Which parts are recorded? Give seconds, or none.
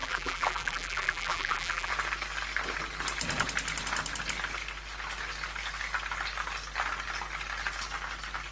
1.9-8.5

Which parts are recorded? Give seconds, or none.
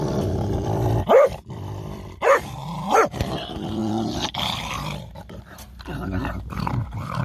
none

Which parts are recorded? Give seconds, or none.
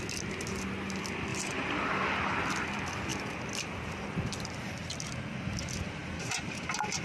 0.0-1.3; 1.9-7.0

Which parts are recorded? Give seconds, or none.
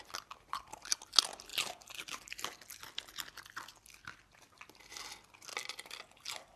0.0-1.5; 2.2-6.6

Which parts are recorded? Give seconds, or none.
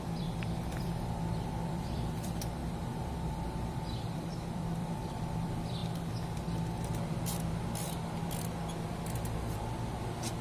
5.8-10.4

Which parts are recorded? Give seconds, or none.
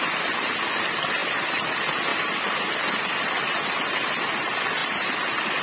0.0-1.2; 1.7-2.1; 3.5-4.8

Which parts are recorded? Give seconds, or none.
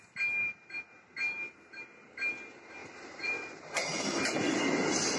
0.0-2.8; 3.6-5.2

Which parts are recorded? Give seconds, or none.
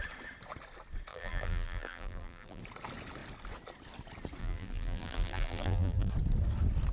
0.0-1.1; 2.6-4.4; 6.1-6.9